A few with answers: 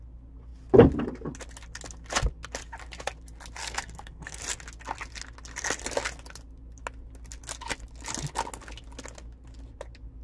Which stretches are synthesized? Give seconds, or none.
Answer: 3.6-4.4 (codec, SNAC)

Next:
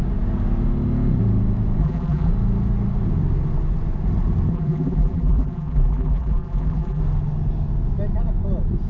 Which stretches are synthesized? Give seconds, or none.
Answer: 1.8-2.3 (vocoder, BigVGAN v2); 4.5-7.0

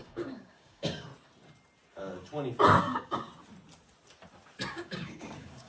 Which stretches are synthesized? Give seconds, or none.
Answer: 0.0-1.1 (codec, DAC); 2.8-3.3; 4.7-5.7

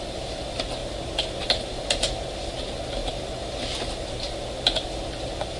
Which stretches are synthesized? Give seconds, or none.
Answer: none

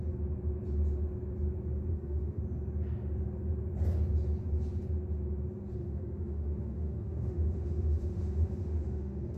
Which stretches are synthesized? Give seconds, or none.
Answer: 1.9-2.4 (autoencoder, DAC-VAE); 5.8-9.4

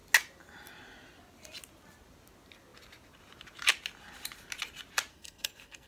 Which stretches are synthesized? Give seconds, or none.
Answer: 5.1-5.9 (codec, SNAC)